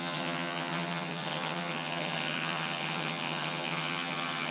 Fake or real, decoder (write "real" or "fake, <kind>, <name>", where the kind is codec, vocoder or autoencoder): fake, vocoder, HiFi-GAN